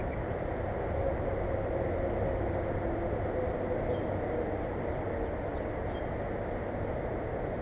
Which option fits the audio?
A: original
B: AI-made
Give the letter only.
A